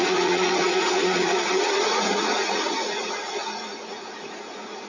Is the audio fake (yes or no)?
yes